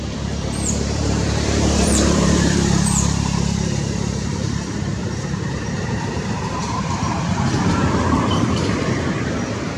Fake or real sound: fake